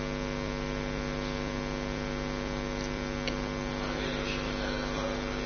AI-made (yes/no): no